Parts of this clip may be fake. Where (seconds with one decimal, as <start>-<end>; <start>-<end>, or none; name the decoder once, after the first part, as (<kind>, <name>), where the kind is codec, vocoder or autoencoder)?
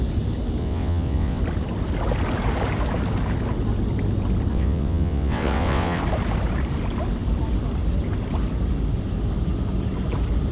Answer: 0.6-1.4 (vocoder, WaveNeXt); 4.5-6.0